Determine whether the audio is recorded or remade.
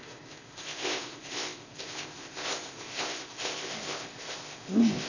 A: remade